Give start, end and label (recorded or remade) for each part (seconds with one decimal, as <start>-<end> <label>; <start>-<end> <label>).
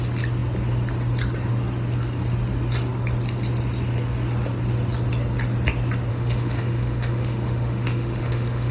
0.0-6.1 recorded; 6.1-8.7 remade